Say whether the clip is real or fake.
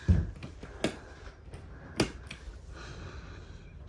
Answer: real